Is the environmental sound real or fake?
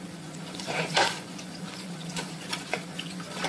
fake